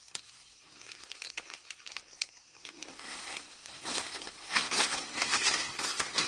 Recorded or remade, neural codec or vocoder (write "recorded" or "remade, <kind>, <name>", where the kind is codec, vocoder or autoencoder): remade, codec, SNAC